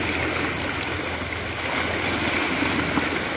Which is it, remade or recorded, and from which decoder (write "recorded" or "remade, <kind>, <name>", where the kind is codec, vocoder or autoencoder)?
recorded